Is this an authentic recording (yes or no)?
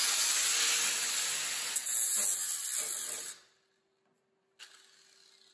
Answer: yes